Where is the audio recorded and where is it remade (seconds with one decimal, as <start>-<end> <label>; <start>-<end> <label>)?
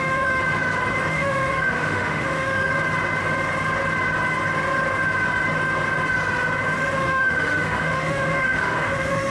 0.0-0.4 remade; 0.4-1.1 recorded; 1.1-2.7 remade; 2.7-7.0 recorded; 7.0-9.3 remade